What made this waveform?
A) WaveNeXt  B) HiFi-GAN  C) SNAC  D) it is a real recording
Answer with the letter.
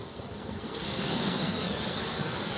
C